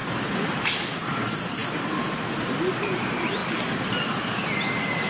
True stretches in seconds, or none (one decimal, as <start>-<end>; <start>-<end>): 1.0-1.6; 2.3-3.4